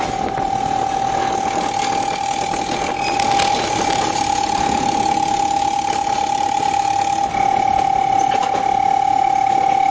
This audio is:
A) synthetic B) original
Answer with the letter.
B